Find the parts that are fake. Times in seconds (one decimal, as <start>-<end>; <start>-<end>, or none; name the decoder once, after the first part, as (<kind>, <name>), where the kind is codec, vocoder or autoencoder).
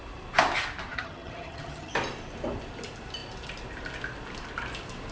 0.9-1.9 (vocoder, HiFi-GAN)